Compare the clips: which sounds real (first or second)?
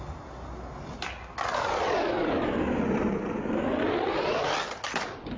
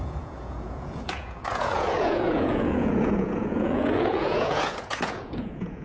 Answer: first